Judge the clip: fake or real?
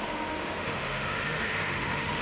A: fake